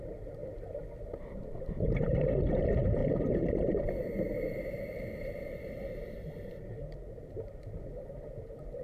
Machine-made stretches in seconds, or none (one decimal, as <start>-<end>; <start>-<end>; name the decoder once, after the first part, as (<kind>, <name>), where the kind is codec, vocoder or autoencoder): 0.0-0.4 (vocoder, BigVGAN v2); 1.0-8.8